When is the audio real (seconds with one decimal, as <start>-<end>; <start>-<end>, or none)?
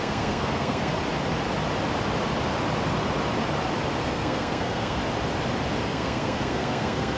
0.9-4.0; 5.0-5.8